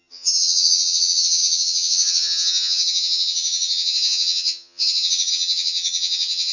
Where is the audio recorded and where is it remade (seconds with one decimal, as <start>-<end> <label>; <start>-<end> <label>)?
0.0-6.5 remade